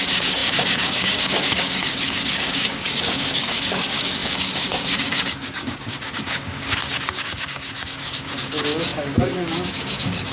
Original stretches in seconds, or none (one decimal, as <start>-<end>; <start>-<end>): none